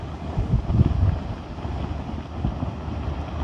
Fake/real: real